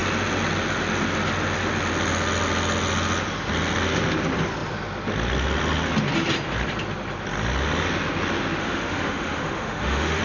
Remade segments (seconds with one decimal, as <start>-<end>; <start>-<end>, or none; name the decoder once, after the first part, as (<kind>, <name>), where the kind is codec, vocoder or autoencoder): 8.6-10.2 (autoencoder, DAC-VAE)